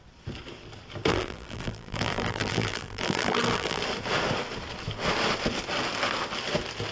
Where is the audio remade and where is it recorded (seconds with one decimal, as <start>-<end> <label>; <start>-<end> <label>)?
0.0-1.1 recorded; 1.1-3.8 remade; 3.8-6.9 recorded